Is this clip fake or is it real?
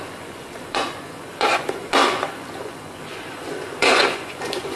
fake